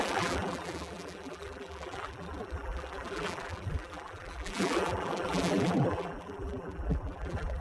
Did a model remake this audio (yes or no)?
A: yes